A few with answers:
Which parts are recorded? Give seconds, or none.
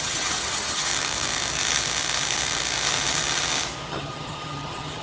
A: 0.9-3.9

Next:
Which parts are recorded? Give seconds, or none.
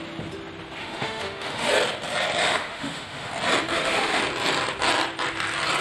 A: 0.0-0.8; 1.7-2.4; 3.3-3.7; 4.2-5.8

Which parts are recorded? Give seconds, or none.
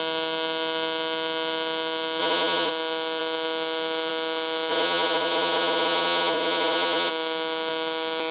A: 0.0-2.2; 2.7-4.7; 7.1-8.3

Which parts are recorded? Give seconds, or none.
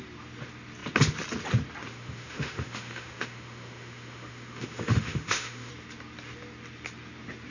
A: 0.0-1.9; 5.7-7.5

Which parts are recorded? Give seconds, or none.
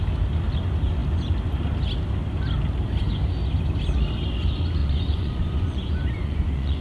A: 0.0-4.8